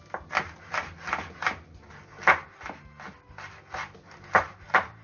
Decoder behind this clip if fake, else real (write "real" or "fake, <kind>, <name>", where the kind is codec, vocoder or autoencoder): real